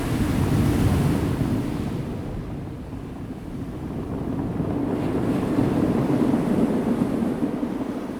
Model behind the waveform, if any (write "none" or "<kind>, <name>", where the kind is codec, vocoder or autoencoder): none